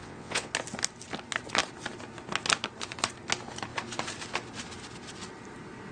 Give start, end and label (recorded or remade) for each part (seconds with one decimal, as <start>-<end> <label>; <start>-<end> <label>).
0.0-0.5 remade; 0.5-5.9 recorded